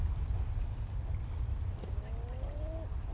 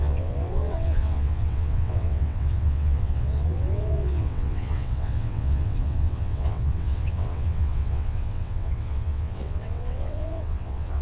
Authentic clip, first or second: first